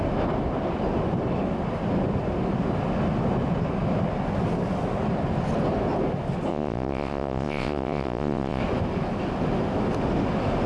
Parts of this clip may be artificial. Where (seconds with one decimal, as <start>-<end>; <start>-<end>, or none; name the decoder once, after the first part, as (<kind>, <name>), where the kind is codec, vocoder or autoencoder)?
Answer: 6.5-8.6 (vocoder, Vocos)